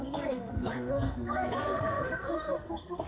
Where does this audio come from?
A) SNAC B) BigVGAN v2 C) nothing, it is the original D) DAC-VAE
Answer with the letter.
A